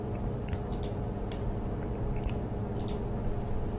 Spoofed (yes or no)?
no